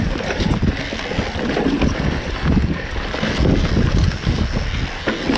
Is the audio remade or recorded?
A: recorded